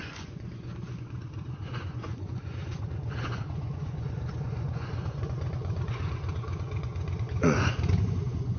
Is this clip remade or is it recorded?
remade